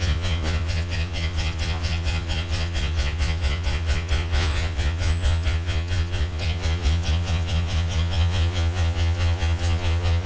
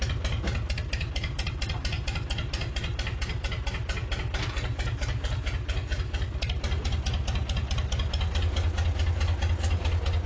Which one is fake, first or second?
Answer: first